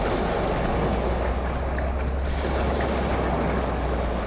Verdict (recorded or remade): recorded